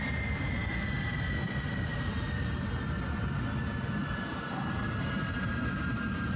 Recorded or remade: recorded